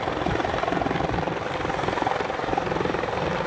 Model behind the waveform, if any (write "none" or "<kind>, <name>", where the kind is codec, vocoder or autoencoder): none